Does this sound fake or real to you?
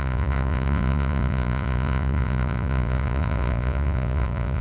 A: fake